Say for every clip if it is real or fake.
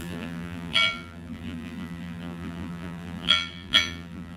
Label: fake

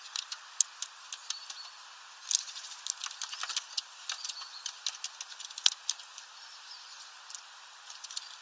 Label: real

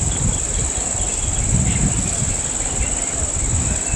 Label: real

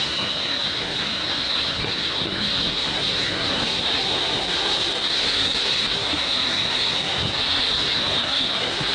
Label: fake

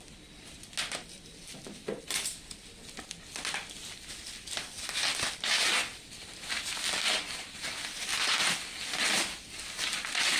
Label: real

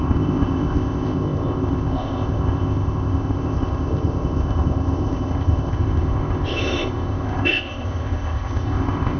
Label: fake